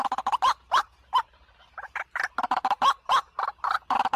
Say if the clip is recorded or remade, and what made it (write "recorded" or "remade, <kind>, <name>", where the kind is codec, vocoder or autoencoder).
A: remade, vocoder, BigVGAN v2